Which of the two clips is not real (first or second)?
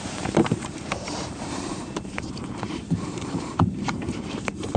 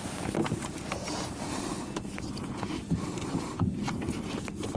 first